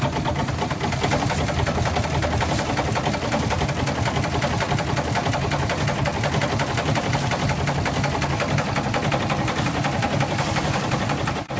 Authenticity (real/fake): real